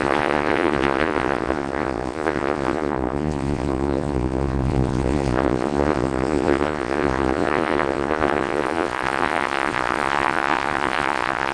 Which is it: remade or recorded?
remade